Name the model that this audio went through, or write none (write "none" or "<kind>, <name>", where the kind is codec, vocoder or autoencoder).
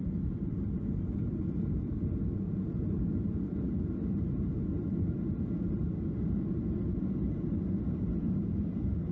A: none